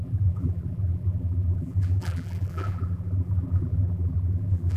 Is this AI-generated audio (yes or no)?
yes